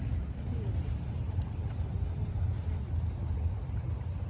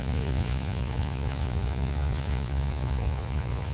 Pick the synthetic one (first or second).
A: second